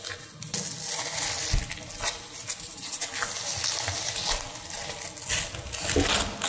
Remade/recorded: recorded